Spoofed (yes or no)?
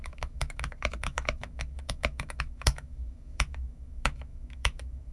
yes